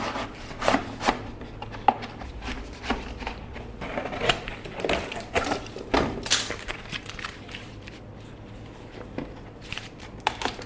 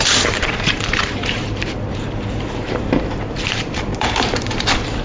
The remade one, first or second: second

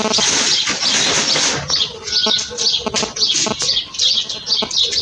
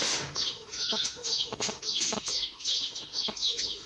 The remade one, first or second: second